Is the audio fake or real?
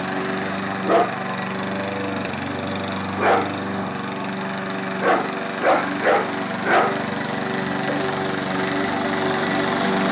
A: real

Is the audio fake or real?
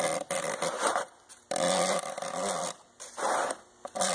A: real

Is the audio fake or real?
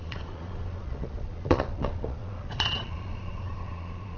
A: fake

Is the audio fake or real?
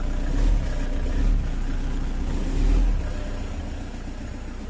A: real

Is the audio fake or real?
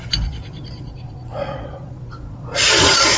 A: fake